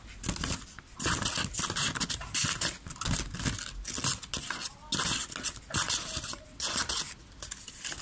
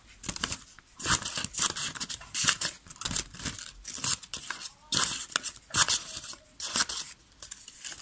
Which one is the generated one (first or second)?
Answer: second